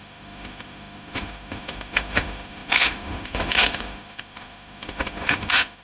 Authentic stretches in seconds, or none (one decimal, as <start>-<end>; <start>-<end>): none